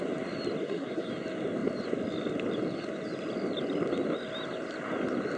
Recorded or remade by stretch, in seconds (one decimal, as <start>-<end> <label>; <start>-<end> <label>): 0.0-0.6 recorded; 0.6-1.1 remade; 1.1-5.4 recorded